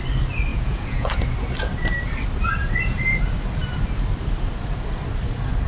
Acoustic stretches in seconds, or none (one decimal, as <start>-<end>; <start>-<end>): 0.0-0.5; 1.2-5.7

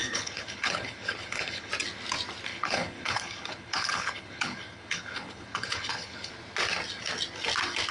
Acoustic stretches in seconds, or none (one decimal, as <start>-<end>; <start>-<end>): 1.7-2.5; 6.3-7.9

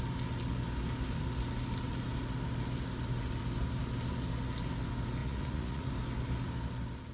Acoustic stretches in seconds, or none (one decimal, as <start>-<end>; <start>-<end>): 0.0-5.2; 5.9-7.1

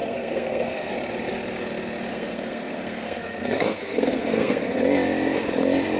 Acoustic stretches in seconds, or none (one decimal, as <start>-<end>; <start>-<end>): 0.9-2.1; 4.8-6.0

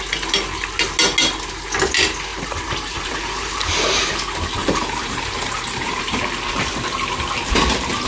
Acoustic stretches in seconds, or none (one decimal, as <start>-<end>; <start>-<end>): 0.0-2.3; 4.1-4.6; 6.0-8.1

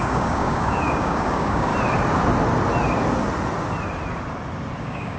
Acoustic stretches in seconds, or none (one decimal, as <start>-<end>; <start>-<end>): 1.7-4.8

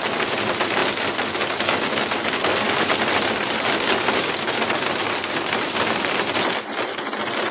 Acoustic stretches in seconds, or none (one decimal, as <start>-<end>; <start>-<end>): 0.0-7.5